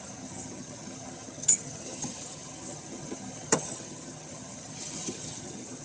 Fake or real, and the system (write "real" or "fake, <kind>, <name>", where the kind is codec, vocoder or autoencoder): fake, vocoder, HiFi-GAN